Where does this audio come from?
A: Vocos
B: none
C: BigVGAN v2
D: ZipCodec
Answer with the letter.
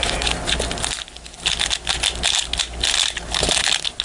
B